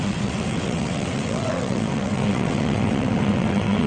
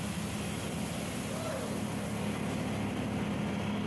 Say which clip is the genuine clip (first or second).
second